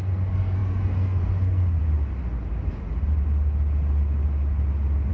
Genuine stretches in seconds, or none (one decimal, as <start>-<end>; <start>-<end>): 1.8-5.1